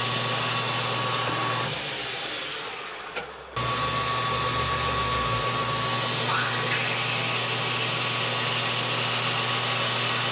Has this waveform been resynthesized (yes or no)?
no